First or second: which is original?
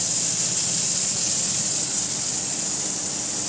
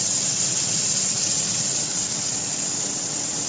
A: first